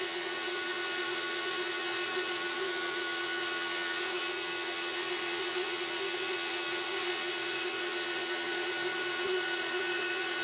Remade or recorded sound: remade